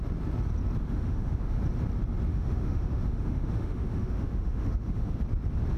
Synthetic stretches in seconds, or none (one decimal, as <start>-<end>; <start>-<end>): 0.8-1.6; 2.3-5.2